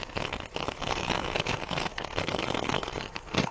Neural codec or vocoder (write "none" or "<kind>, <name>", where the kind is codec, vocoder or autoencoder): codec, SNAC